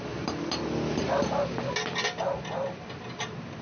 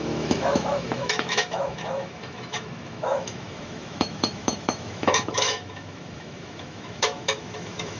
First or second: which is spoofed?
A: second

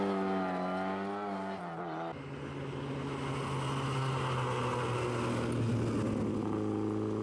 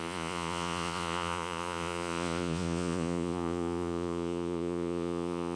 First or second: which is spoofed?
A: second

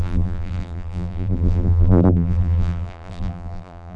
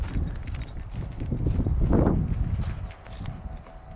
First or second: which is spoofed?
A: first